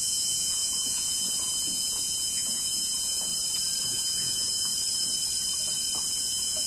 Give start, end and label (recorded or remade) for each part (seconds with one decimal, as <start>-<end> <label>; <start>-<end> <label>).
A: 0.0-3.3 remade; 3.3-3.8 recorded; 3.8-4.7 remade; 4.7-6.2 recorded; 6.2-6.7 remade